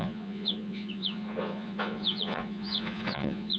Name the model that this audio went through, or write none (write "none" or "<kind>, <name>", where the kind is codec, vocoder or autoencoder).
vocoder, Vocos